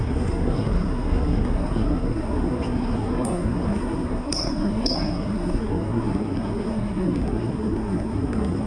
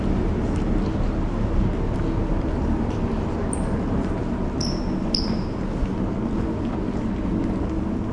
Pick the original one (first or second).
second